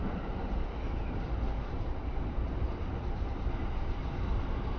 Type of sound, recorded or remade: remade